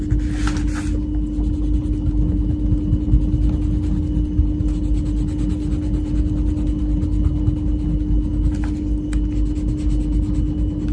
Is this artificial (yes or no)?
no